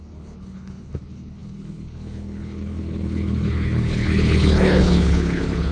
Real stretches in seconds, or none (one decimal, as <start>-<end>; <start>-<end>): none